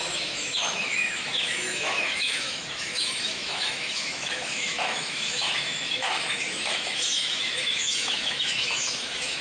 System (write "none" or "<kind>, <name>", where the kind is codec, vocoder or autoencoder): autoencoder, DAC-VAE